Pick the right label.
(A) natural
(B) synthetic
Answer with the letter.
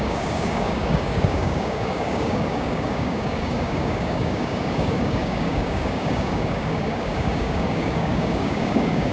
B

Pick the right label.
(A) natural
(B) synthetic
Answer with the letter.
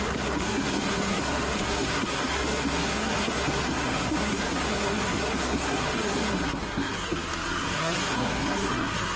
B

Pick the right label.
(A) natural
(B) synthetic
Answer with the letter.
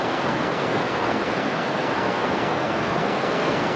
B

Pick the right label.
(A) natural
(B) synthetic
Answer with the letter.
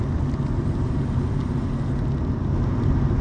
A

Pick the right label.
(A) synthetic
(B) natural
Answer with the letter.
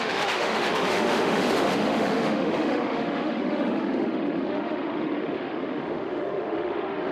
A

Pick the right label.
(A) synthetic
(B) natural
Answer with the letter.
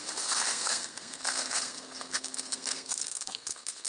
A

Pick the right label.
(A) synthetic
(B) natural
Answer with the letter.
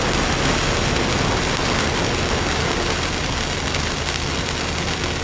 B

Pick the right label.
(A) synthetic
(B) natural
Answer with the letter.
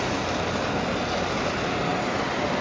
B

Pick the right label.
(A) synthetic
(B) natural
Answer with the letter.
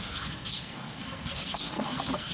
A